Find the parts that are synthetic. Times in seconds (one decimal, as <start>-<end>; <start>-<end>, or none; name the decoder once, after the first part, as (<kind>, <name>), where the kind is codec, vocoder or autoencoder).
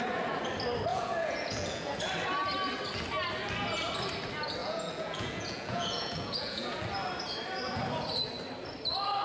0.9-2.0 (vocoder, Vocos); 4.6-6.8